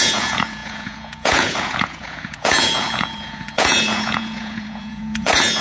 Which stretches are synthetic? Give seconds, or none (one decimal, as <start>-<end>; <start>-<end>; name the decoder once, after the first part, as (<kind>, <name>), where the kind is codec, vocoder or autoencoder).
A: 0.0-5.6 (vocoder, Vocos)